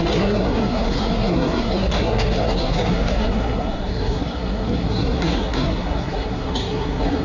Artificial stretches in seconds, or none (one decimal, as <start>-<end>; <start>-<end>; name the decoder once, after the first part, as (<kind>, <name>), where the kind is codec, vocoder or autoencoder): 0.0-7.2 (codec, SNAC)